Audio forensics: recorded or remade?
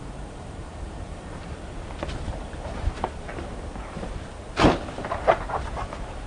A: remade